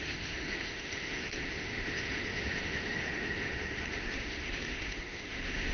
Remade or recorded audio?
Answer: remade